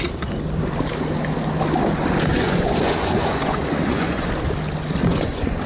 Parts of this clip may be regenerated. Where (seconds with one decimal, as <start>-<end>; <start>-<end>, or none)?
2.3-4.3; 5.0-5.7